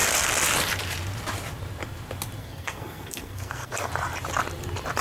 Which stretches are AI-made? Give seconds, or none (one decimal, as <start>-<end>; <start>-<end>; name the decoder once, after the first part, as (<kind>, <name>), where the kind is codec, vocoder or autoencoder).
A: 2.4-3.9 (codec, SNAC)